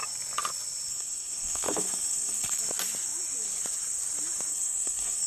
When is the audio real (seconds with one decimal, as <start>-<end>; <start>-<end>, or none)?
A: 0.0-0.9; 2.6-4.5